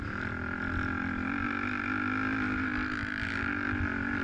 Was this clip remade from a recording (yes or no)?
no